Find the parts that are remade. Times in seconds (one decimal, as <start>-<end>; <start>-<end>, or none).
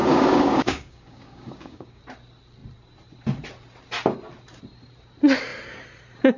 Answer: 0.0-2.0